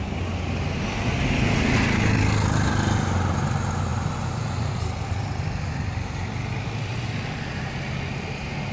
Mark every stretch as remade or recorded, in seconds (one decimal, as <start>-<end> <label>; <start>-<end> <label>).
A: 0.0-8.7 recorded

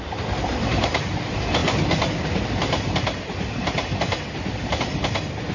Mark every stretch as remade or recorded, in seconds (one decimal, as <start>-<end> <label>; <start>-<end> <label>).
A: 0.0-5.5 recorded

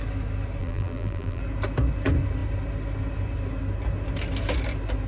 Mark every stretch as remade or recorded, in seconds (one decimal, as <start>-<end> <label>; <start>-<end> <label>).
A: 0.0-0.6 recorded; 0.6-1.4 remade; 1.4-5.1 recorded

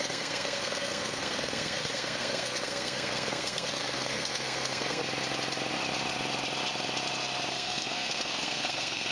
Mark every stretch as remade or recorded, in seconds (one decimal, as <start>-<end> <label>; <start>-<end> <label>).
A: 0.0-5.0 remade; 5.0-7.5 recorded; 7.5-9.1 remade